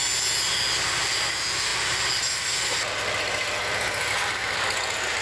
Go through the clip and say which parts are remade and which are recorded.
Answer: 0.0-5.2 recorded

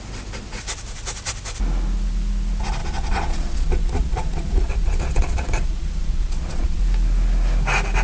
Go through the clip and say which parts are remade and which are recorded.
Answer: 0.0-2.8 recorded; 2.8-6.8 remade; 6.8-8.0 recorded

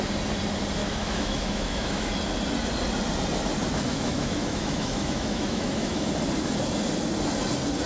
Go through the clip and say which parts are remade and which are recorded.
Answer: 0.0-0.8 recorded; 0.8-2.1 remade; 2.1-3.9 recorded; 3.9-6.1 remade; 6.1-7.9 recorded

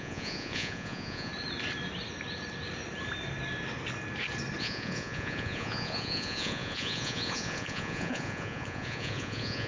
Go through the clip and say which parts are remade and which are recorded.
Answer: 0.0-1.3 remade; 1.3-4.6 recorded; 4.6-9.7 remade

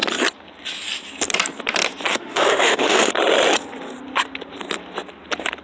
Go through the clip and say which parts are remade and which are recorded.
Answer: 0.0-2.1 recorded; 2.1-3.1 remade; 3.1-5.6 recorded

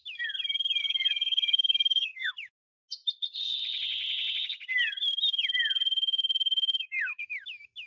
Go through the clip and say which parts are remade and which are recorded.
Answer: 0.0-0.8 recorded; 0.8-2.3 remade; 2.3-7.9 recorded

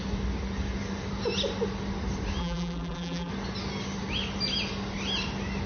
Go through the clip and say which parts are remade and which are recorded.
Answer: 0.0-2.4 recorded; 2.4-3.3 remade; 3.3-5.7 recorded

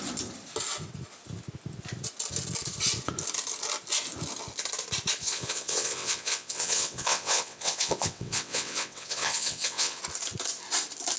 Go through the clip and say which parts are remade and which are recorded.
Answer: 0.0-5.2 recorded; 5.2-10.0 remade; 10.0-11.2 recorded